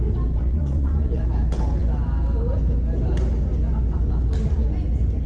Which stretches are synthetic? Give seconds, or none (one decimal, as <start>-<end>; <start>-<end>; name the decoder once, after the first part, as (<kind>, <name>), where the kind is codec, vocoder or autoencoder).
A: 0.4-1.2 (vocoder, Vocos)